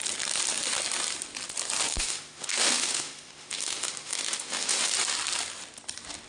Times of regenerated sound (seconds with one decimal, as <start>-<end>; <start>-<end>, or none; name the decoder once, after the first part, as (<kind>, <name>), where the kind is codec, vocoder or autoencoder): 1.8-4.9 (autoencoder, DAC-VAE)